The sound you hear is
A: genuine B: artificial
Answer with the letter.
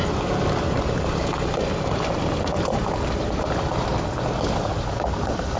A